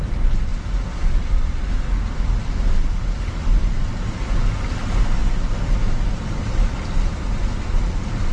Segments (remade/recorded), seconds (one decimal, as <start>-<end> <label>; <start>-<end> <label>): 0.0-8.3 recorded